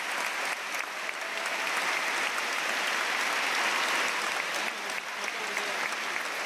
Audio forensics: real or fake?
real